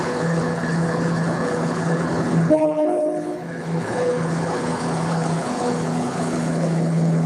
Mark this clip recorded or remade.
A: remade